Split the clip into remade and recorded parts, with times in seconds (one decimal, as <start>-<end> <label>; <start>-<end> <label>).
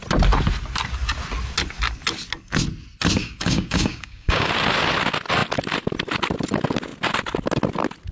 0.0-3.2 recorded; 3.2-4.5 remade; 4.5-8.1 recorded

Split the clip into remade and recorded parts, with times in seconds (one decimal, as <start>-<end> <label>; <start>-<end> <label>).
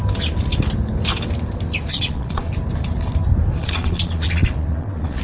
0.0-1.9 recorded; 1.9-2.5 remade; 2.5-3.6 recorded; 3.6-5.2 remade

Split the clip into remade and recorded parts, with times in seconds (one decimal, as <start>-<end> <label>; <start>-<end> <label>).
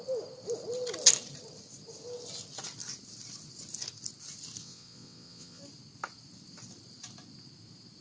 0.0-4.6 recorded; 4.6-5.6 remade; 5.6-8.0 recorded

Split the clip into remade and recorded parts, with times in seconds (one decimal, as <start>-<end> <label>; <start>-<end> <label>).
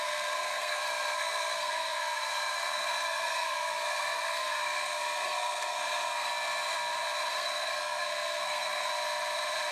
0.0-6.3 remade; 6.3-7.3 recorded; 7.3-8.9 remade; 8.9-9.7 recorded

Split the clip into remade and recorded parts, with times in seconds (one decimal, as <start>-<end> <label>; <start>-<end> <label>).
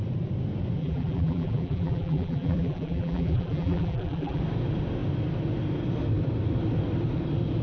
0.0-0.8 recorded; 0.8-4.4 remade; 4.4-7.6 recorded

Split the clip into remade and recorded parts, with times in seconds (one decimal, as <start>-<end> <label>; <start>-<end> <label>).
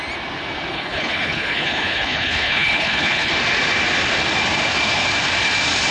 0.0-0.7 recorded; 0.7-3.3 remade; 3.3-5.9 recorded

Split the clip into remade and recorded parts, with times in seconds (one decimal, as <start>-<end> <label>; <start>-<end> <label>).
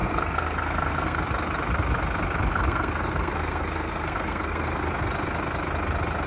0.0-1.2 remade; 1.2-2.5 recorded; 2.5-4.8 remade; 4.8-6.3 recorded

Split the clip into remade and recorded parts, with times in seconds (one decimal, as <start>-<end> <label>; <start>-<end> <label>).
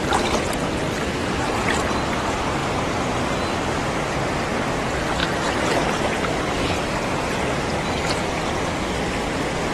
0.0-9.7 recorded